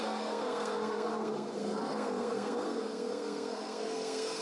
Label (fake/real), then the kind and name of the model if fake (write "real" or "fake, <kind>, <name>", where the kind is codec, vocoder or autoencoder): fake, codec, SNAC